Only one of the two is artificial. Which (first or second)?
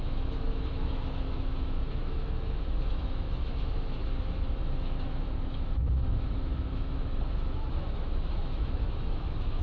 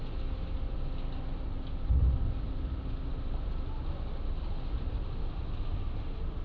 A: first